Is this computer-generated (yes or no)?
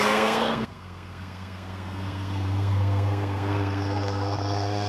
yes